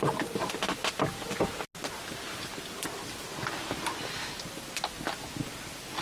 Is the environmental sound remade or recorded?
recorded